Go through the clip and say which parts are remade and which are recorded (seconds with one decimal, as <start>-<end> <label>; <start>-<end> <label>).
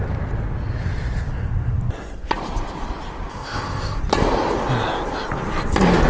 0.0-3.3 recorded; 3.3-4.0 remade; 4.0-6.1 recorded